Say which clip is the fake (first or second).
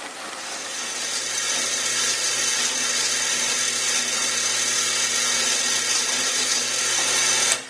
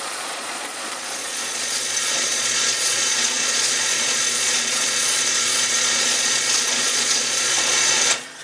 second